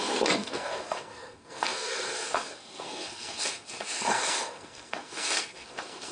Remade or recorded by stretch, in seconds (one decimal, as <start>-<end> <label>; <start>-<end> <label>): 0.0-6.1 remade